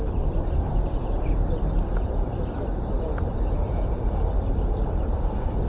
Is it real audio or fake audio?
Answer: fake